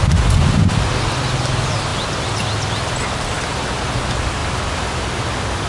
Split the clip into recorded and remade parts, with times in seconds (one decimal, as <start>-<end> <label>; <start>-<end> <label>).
0.0-5.7 recorded